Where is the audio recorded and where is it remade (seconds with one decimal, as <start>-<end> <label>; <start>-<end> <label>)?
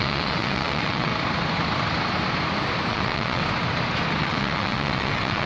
0.0-1.1 remade; 1.1-2.9 recorded; 2.9-3.4 remade; 3.4-4.2 recorded; 4.2-5.5 remade